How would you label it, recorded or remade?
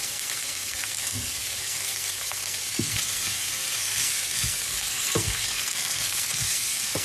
remade